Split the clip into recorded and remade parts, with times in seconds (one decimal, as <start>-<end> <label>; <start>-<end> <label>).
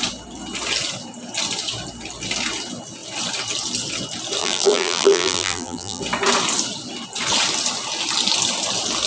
0.0-4.4 recorded; 4.4-6.0 remade; 6.0-9.1 recorded